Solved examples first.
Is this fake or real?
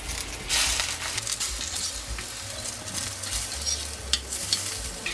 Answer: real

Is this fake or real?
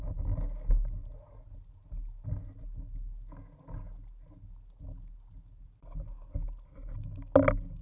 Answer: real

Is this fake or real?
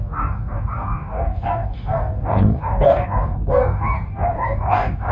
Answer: fake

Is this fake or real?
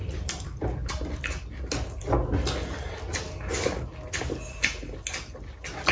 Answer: real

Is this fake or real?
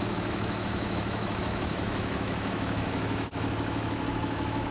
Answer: fake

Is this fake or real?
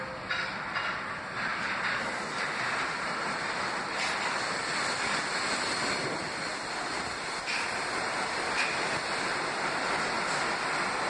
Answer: real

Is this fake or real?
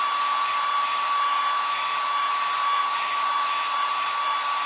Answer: real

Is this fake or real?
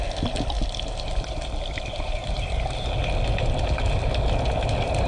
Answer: real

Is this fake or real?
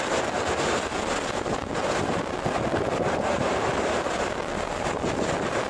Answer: real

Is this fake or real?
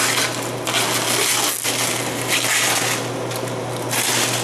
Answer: real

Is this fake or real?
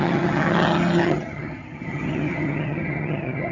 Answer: fake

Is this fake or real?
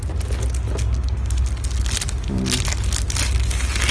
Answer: real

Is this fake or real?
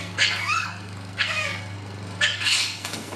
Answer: fake